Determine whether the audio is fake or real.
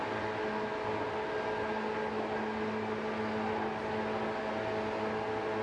real